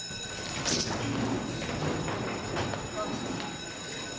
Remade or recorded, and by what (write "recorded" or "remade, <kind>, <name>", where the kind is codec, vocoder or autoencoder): recorded